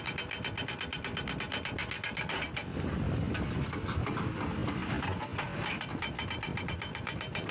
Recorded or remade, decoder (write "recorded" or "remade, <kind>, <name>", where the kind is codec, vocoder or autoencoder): recorded